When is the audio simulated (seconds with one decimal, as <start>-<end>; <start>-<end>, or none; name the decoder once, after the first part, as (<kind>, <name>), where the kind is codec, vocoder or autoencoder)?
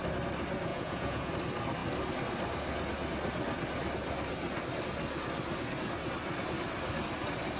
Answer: 0.7-1.3 (vocoder, Vocos)